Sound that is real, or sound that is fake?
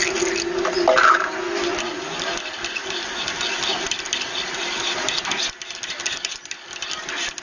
real